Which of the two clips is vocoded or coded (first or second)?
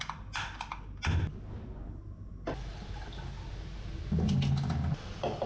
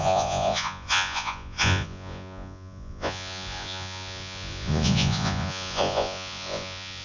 second